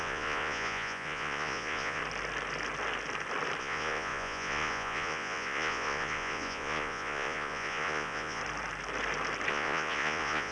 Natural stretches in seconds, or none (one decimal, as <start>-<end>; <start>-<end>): 2.0-3.6; 8.4-9.5